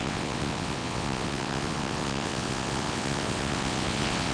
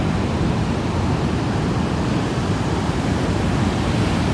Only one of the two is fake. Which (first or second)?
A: first